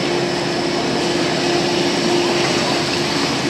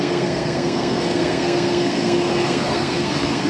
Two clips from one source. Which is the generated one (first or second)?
second